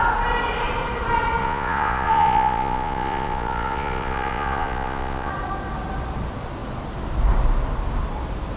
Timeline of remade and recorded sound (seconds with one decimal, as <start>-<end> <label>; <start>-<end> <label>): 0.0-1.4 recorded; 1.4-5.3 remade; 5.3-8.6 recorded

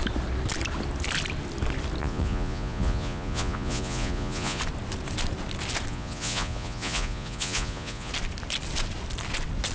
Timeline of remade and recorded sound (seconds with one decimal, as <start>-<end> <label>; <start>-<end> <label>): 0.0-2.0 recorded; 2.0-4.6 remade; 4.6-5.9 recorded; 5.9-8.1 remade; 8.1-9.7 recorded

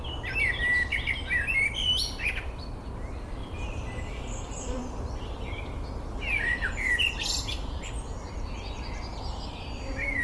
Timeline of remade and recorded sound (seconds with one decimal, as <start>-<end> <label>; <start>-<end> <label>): 0.0-3.4 recorded; 3.4-7.1 remade; 7.1-10.2 recorded

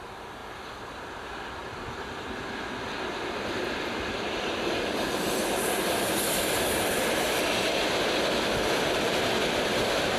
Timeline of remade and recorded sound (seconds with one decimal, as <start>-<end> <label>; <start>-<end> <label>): 0.0-10.2 recorded

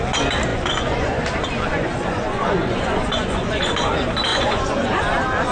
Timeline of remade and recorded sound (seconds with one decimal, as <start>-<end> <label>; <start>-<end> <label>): 0.0-0.5 recorded; 0.5-1.2 remade; 1.2-1.7 recorded; 1.7-3.9 remade; 3.9-4.3 recorded; 4.3-5.0 remade; 5.0-5.5 recorded